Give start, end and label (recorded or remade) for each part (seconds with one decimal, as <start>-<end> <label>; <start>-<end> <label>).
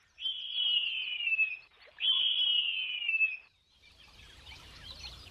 0.0-2.5 remade; 2.5-3.2 recorded; 3.2-5.3 remade